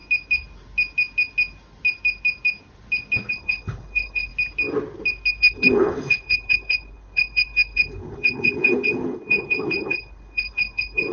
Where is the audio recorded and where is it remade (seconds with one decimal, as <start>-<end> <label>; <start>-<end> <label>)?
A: 0.0-3.3 recorded; 3.3-4.3 remade; 4.3-5.4 recorded; 5.4-11.1 remade